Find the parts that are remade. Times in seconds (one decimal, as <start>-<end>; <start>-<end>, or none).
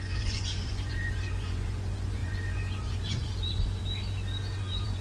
0.0-3.8; 4.6-5.0